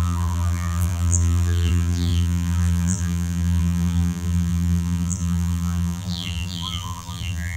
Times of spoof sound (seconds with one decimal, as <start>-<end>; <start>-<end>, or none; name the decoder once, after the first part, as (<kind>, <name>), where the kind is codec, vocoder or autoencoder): 0.0-7.6 (vocoder, BigVGAN v2)